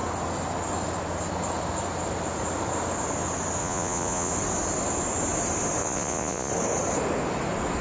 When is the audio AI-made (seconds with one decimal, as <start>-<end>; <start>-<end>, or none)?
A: 3.6-4.3; 5.8-6.5